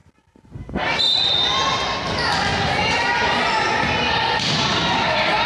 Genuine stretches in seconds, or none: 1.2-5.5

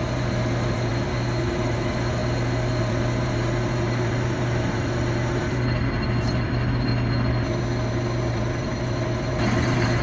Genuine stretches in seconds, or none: 0.9-1.4; 2.2-2.8; 6.9-8.3

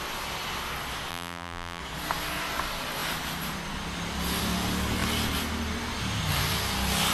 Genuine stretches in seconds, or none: 0.0-1.1; 1.8-7.1

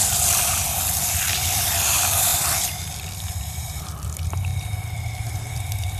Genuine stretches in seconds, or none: 0.0-0.7; 4.5-5.2